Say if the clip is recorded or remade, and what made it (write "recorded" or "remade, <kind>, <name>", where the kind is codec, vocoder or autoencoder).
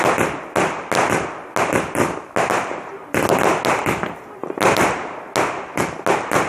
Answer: recorded